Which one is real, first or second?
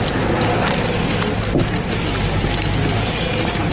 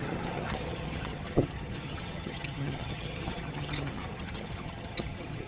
first